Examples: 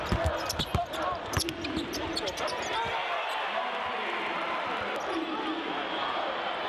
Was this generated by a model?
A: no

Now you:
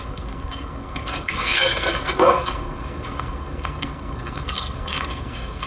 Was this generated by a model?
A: yes